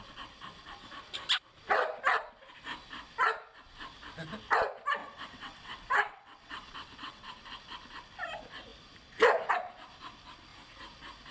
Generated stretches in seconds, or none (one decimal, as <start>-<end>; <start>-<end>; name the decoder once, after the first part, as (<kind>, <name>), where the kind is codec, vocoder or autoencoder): 5.0-7.3 (vocoder, WaveNeXt)